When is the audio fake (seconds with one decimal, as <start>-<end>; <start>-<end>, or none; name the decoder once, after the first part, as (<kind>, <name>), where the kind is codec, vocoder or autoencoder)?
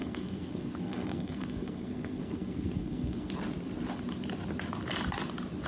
0.0-3.3 (codec, SNAC)